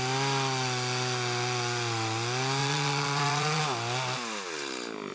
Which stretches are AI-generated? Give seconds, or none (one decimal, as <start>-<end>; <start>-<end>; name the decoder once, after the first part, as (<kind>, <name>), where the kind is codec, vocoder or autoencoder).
2.6-3.6 (vocoder, Vocos)